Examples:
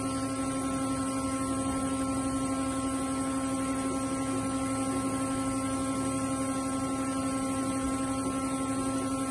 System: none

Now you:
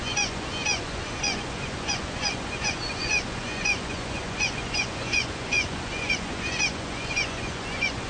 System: vocoder, Vocos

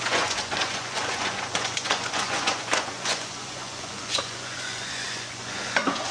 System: vocoder, Vocos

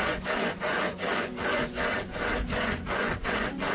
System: vocoder, Vocos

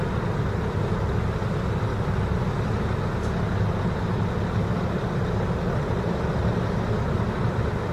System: none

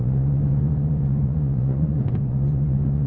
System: vocoder, Vocos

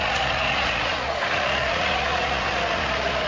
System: vocoder, Vocos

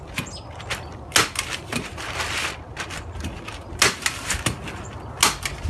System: none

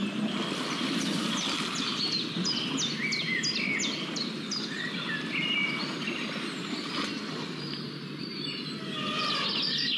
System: none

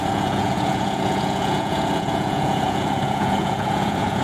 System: vocoder, Vocos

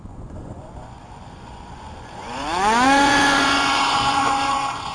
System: vocoder, Vocos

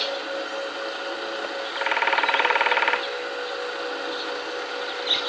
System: none